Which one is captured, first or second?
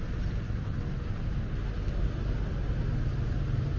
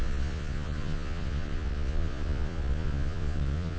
first